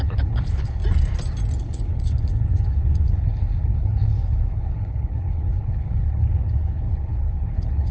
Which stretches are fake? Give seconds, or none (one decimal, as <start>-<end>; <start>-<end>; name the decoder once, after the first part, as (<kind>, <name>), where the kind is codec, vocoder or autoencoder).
0.0-0.8 (codec, HILCodec); 1.6-7.9

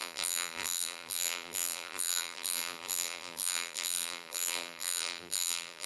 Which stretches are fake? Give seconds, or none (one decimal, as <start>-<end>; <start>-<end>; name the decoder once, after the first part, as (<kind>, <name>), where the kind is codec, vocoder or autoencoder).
0.0-5.9 (vocoder, BigVGAN v2)

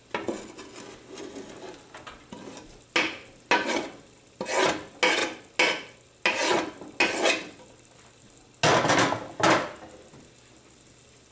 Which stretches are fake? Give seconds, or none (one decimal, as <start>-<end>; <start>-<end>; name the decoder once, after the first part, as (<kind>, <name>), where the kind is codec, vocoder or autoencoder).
none